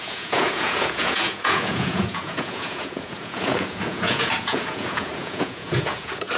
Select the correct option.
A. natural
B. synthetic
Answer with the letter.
B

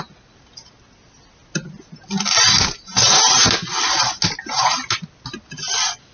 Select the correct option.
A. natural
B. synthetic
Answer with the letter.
A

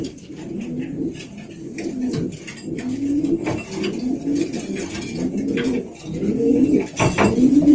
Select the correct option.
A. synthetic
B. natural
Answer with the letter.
B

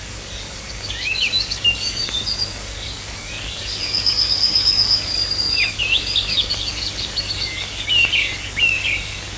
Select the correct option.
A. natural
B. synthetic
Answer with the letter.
B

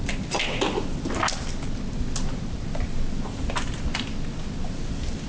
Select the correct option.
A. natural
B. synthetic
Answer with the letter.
A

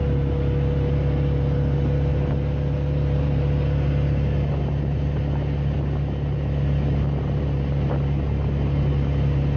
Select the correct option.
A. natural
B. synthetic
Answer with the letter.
A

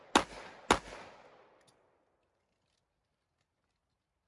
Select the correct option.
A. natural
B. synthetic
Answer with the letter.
A